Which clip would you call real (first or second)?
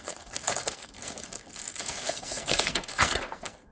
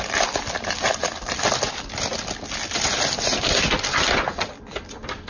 second